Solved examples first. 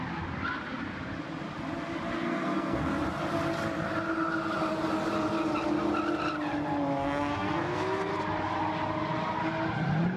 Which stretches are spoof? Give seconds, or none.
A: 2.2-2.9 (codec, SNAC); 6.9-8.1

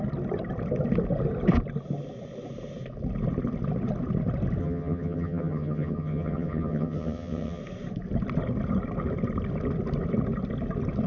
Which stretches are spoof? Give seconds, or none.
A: 4.6-7.6 (vocoder, HiFi-GAN)

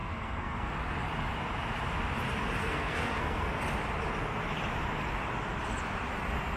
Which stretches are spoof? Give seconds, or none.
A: 0.0-0.7 (codec, SNAC); 2.6-3.5

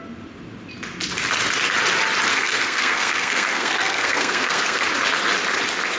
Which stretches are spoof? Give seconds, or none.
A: 2.3-4.9 (codec, SNAC)

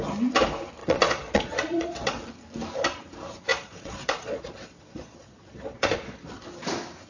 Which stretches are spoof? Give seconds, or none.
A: 0.8-2.2 (vocoder, Vocos); 3.5-6.3

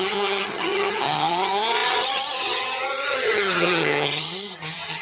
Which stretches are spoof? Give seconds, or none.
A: 0.0-5.0 (vocoder, HiFi-GAN)

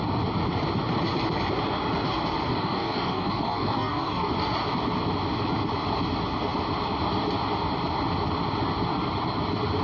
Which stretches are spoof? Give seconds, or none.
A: 2.5-4.3 (codec, DAC)

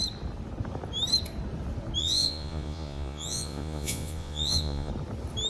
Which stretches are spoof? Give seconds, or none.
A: 2.0-4.9 (vocoder, Vocos)